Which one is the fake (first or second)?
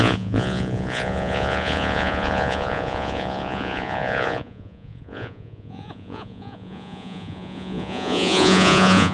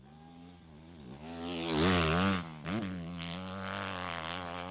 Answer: first